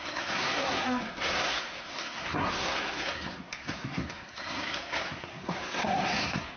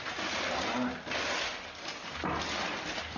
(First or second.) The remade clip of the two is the first